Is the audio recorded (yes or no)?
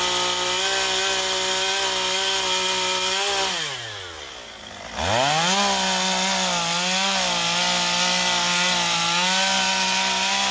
yes